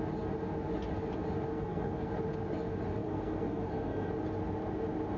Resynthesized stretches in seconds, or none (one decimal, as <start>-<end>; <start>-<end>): 1.5-2.1; 3.0-4.1